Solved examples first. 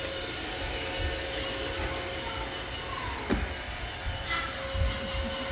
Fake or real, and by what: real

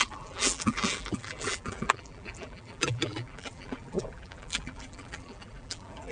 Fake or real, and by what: fake, vocoder, BigVGAN v2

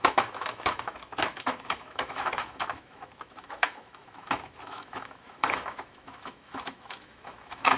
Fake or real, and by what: fake, autoencoder, DAC-VAE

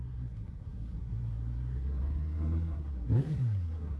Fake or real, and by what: fake, codec, SNAC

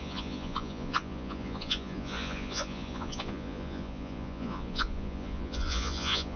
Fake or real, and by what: fake, vocoder, Vocos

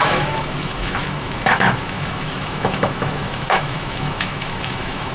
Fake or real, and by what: fake, autoencoder, DAC-VAE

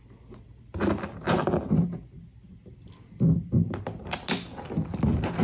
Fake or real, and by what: real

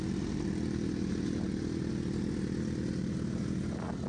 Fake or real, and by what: real